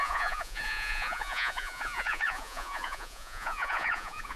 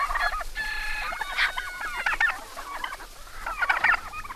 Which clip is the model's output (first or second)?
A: first